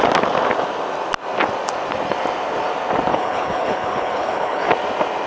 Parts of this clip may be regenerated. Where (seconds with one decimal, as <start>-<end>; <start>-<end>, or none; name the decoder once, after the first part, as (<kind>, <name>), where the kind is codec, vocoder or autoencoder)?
3.1-4.7 (codec, HILCodec)

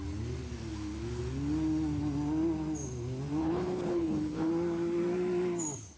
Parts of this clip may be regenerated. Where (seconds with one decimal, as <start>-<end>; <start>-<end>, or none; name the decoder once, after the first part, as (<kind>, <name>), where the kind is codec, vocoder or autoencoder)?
3.4-4.5 (codec, HILCodec)